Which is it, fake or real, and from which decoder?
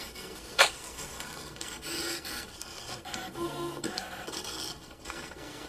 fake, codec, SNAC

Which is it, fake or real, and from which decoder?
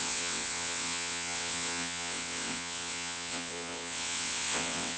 fake, vocoder, WaveNeXt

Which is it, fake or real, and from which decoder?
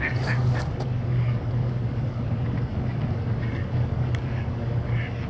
fake, codec, DAC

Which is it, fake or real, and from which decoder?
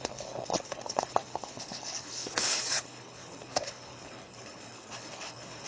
fake, codec, HILCodec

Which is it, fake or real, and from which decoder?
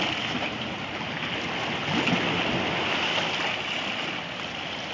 real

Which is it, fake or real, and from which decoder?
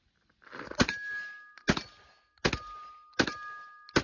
real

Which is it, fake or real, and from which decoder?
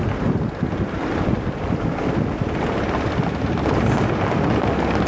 real